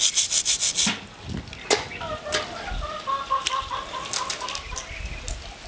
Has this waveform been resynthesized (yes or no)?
no